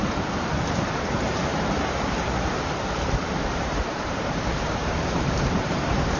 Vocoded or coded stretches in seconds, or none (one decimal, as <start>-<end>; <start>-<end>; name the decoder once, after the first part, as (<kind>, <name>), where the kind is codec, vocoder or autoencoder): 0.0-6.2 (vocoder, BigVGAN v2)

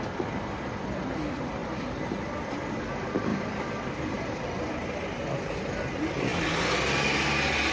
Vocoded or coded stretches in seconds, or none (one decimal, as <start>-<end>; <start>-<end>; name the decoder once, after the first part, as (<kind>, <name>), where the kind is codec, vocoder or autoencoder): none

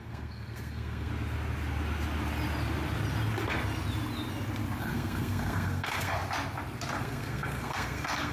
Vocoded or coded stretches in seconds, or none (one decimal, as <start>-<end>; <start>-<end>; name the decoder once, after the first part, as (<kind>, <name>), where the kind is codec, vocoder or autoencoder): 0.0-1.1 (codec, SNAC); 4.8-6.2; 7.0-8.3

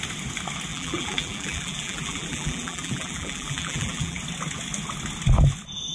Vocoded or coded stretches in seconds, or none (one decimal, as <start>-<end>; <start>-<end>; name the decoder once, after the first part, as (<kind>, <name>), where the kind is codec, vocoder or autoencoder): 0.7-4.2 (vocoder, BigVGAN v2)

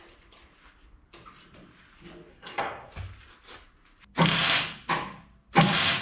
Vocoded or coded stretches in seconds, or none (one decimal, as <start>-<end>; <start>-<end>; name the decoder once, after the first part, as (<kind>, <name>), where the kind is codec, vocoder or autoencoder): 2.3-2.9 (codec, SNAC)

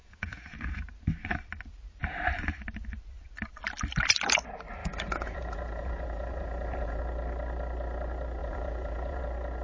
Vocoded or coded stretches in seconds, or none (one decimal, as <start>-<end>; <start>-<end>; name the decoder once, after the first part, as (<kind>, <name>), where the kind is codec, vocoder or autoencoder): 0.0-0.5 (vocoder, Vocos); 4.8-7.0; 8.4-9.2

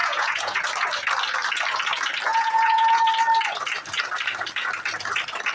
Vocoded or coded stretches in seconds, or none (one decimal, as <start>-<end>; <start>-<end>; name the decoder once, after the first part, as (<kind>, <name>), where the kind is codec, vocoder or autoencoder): 0.0-0.6 (vocoder, Vocos); 2.3-3.1